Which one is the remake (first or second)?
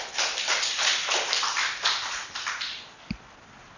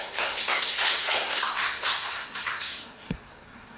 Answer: second